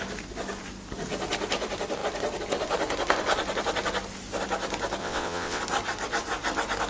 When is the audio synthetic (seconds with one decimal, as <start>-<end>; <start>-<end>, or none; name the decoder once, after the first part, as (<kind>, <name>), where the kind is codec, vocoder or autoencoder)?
5.0-5.6 (vocoder, WaveNeXt)